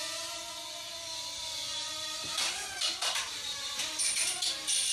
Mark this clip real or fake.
real